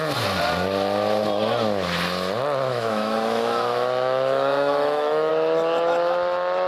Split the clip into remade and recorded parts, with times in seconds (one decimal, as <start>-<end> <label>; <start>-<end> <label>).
0.0-2.7 recorded; 2.7-5.3 remade; 5.3-6.7 recorded